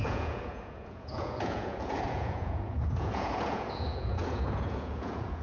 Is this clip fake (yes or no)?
yes